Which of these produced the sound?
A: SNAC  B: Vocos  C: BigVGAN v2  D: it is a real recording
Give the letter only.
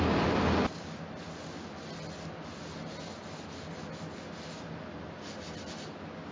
D